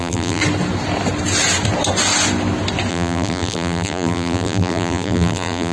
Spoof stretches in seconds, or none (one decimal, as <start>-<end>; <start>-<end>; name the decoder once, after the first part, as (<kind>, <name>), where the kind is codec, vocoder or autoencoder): 0.0-0.4 (vocoder, BigVGAN v2); 2.9-5.7